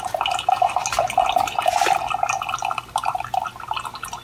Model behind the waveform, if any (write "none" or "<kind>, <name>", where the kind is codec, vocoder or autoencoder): none